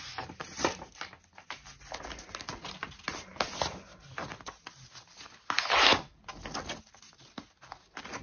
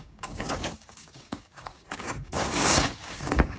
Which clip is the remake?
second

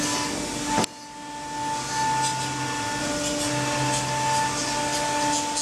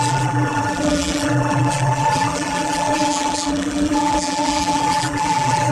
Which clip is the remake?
second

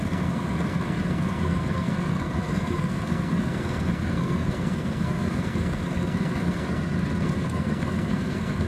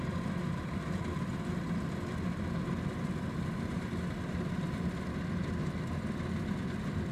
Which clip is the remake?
first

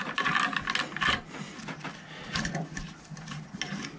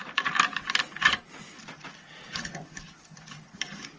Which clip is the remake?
second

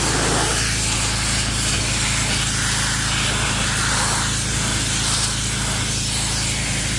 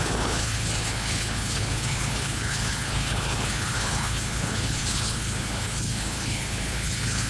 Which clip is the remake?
second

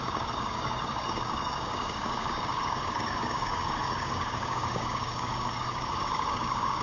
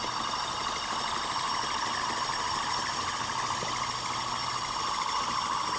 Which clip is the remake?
first